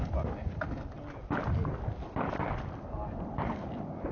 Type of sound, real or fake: real